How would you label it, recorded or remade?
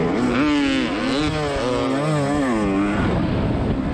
recorded